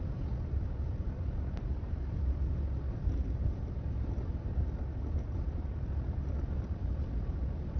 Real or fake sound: fake